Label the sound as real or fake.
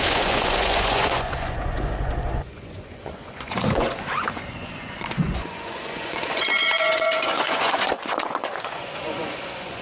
fake